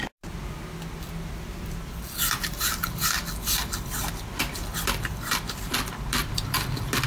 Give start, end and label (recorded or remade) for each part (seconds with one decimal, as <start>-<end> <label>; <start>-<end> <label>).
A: 0.0-4.7 recorded; 4.7-5.7 remade; 5.7-7.1 recorded